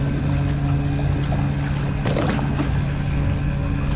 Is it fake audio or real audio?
real